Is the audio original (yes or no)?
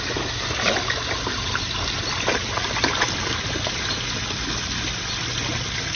yes